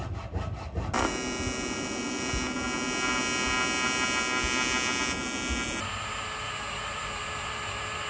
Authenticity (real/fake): real